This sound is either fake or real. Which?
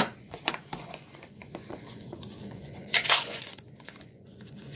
fake